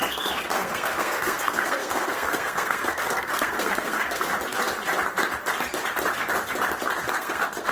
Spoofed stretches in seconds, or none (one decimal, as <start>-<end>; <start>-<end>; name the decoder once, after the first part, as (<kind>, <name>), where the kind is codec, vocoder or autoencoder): 0.0-4.3 (codec, SNAC); 7.1-7.7